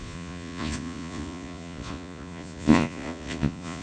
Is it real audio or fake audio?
fake